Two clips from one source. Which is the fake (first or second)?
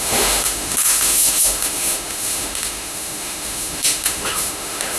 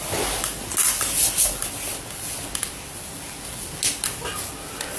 first